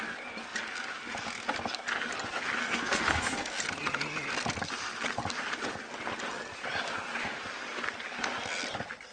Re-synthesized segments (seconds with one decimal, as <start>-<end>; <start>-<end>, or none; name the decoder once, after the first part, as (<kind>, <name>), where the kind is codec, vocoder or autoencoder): 2.6-3.6 (codec, SNAC)